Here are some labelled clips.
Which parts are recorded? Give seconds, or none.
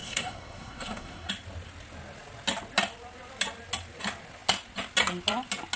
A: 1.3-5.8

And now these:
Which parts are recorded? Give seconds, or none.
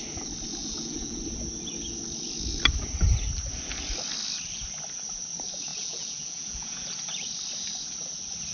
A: 0.0-0.6; 1.2-5.7; 7.0-8.5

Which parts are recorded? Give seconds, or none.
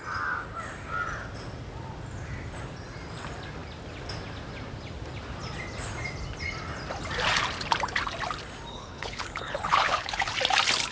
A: 0.0-8.7; 10.3-10.9